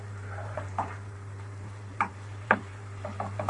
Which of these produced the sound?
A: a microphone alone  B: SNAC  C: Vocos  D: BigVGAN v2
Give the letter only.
D